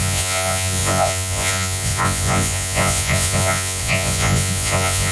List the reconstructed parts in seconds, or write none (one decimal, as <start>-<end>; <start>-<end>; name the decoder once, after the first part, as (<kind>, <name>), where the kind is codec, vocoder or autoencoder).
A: 0.0-5.1 (vocoder, Vocos)